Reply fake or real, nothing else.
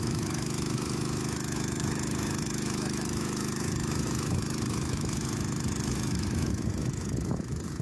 fake